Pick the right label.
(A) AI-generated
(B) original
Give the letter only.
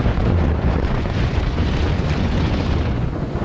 A